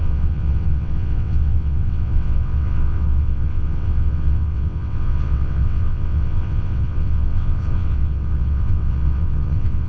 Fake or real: fake